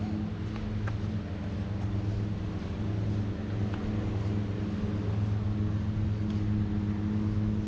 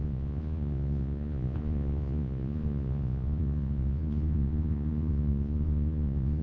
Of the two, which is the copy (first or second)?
second